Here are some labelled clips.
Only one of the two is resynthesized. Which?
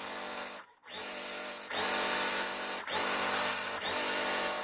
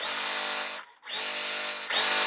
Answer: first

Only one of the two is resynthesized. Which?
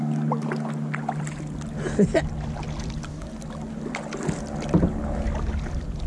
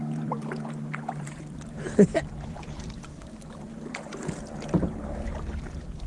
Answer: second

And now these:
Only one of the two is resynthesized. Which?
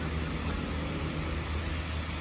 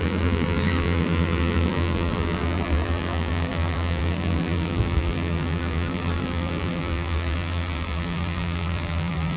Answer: second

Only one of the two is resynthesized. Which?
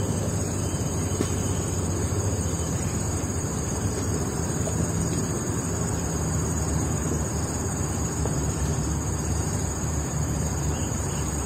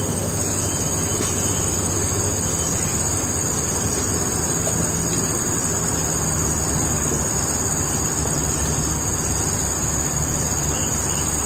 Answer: first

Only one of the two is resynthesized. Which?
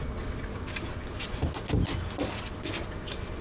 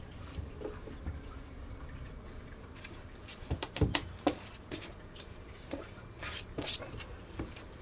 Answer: second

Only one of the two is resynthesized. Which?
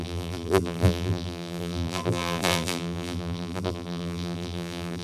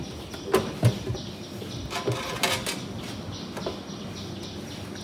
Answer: first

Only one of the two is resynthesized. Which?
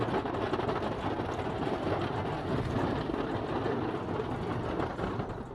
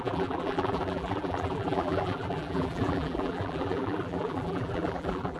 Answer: second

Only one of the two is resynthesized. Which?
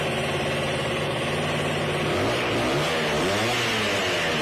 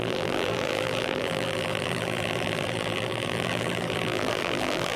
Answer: second